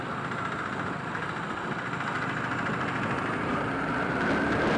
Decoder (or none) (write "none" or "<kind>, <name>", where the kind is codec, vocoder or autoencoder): none